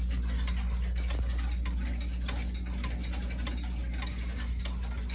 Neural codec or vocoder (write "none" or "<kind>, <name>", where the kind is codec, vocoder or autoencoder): none